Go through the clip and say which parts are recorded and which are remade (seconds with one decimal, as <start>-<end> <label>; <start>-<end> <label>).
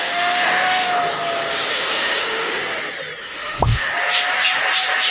0.0-0.9 remade; 0.9-1.7 recorded; 1.7-2.6 remade; 2.6-3.2 recorded; 3.2-3.9 remade; 3.9-5.1 recorded